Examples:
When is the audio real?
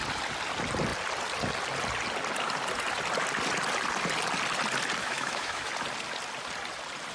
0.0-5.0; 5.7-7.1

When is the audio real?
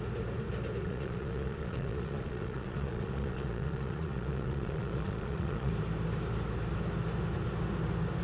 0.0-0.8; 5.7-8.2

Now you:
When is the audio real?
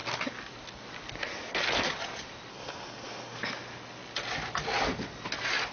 0.0-2.5; 3.4-5.7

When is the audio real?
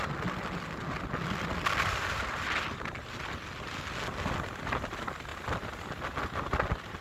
0.0-7.0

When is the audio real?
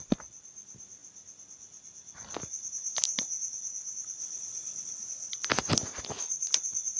0.0-4.2; 5.3-7.0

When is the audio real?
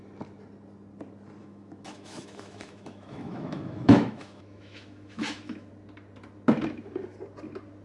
0.0-1.4; 5.7-7.8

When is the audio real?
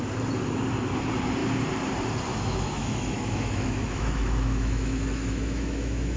0.0-2.3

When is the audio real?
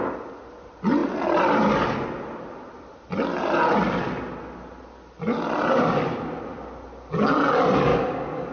0.0-7.9